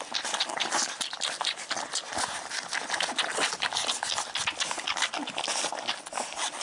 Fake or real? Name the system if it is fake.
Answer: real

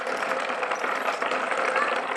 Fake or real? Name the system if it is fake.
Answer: real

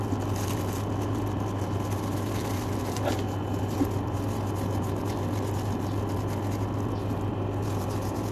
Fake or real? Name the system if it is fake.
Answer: real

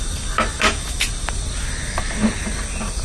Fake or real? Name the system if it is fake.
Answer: real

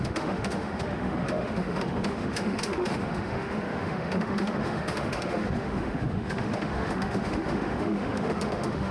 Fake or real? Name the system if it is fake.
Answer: fake, autoencoder, DAC-VAE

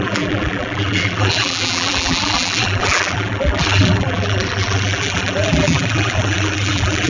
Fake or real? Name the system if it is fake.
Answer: fake, vocoder, BigVGAN v2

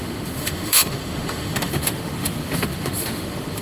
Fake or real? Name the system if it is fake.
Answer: fake, autoencoder, DAC-VAE